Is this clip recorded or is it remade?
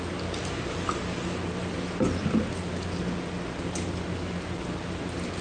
recorded